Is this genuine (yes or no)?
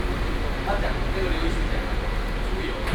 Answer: yes